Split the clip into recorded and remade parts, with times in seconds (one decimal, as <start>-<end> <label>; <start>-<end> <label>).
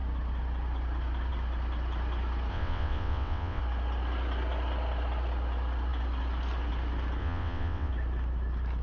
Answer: 0.0-2.5 recorded; 2.5-3.6 remade; 3.6-7.2 recorded; 7.2-7.9 remade; 7.9-8.8 recorded